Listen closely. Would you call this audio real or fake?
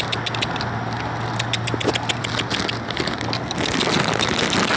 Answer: real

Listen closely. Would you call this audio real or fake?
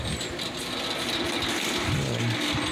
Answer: real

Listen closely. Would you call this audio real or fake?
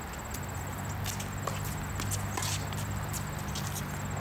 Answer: real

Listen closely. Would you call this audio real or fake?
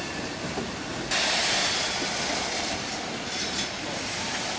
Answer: real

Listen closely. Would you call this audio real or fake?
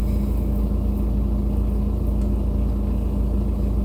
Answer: real